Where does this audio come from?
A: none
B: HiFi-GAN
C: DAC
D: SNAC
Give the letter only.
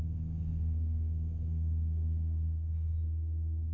D